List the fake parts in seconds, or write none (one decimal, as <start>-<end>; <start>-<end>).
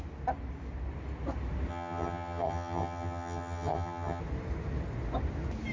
1.7-4.2